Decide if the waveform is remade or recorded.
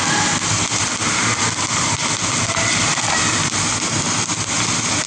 recorded